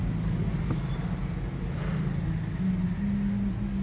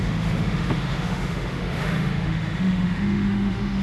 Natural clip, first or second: first